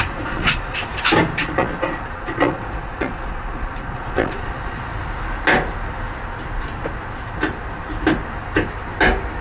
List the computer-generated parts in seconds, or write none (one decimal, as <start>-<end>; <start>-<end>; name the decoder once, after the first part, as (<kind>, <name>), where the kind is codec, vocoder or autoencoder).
0.0-0.9 (vocoder, Vocos); 1.4-4.9